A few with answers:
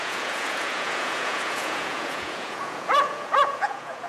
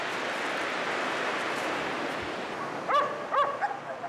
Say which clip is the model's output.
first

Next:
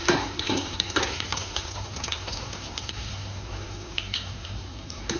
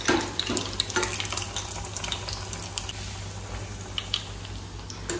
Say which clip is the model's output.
first